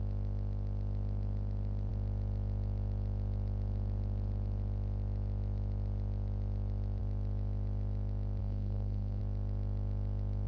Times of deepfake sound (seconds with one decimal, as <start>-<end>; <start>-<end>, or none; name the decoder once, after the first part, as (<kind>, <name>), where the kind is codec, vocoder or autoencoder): 8.4-9.2 (codec, SNAC)